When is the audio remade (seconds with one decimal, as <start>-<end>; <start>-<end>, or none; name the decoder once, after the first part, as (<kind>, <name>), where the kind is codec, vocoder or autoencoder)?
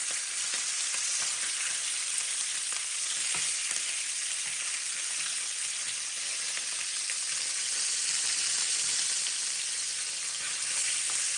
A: none